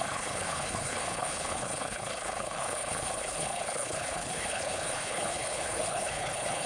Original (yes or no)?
no